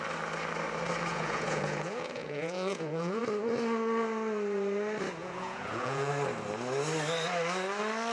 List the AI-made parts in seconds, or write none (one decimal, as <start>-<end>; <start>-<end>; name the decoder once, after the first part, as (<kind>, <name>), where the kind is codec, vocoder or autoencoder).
1.1-3.2 (vocoder, Vocos); 5.2-6.1